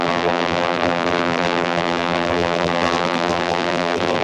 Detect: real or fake fake